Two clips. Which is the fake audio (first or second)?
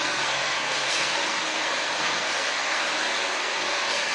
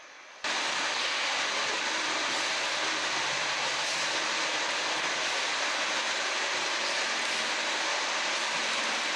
first